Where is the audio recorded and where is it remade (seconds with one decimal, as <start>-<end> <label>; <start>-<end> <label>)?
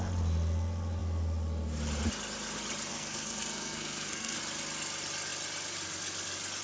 0.0-2.9 recorded; 2.9-4.4 remade; 4.4-6.6 recorded